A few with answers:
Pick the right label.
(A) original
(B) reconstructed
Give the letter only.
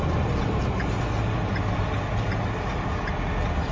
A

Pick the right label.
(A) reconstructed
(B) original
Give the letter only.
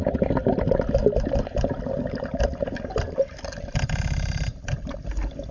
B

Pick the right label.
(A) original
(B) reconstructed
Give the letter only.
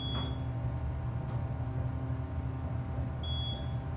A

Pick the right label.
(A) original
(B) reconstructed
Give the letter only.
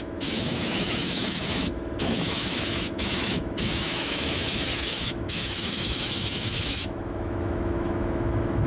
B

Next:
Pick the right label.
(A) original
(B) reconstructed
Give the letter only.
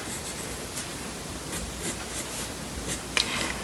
A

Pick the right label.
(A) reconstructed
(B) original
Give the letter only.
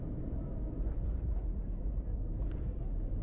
B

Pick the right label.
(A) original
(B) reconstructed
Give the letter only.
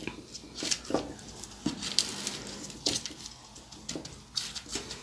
A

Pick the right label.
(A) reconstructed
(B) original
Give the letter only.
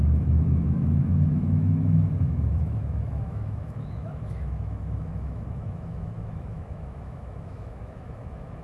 A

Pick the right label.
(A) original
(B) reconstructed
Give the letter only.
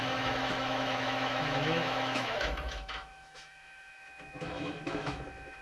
B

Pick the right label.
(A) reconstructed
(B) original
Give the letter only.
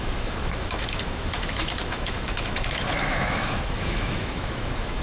A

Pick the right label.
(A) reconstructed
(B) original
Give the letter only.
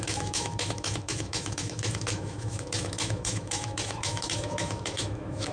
A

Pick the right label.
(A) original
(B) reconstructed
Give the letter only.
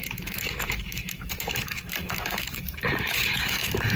B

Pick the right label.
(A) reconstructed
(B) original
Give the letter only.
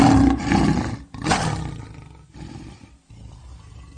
B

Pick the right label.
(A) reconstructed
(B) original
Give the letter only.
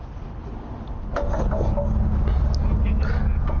B